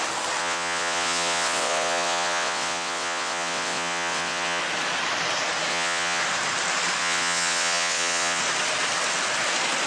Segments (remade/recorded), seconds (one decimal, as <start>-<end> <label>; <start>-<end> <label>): 0.0-0.4 recorded; 0.4-4.6 remade; 4.6-5.7 recorded; 5.7-6.2 remade; 6.2-7.0 recorded; 7.0-8.4 remade; 8.4-9.9 recorded